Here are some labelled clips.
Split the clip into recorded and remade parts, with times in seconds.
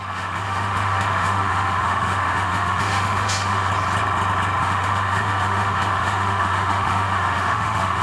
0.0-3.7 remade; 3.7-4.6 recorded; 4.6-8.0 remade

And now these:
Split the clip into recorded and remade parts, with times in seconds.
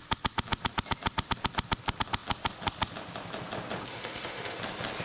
0.0-3.9 recorded; 3.9-4.6 remade; 4.6-5.0 recorded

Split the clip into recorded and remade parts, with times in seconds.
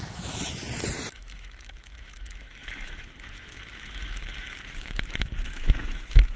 0.0-0.6 remade; 0.6-1.1 recorded; 1.1-6.4 remade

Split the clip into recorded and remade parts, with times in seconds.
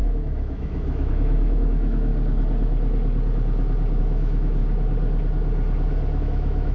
0.0-2.1 remade; 2.1-4.0 recorded; 4.0-4.6 remade; 4.6-6.2 recorded; 6.2-6.7 remade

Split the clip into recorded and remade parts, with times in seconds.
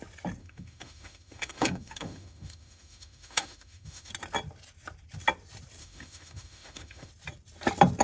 0.0-0.4 recorded; 0.4-4.1 remade; 4.1-5.8 recorded; 5.8-7.1 remade; 7.1-8.0 recorded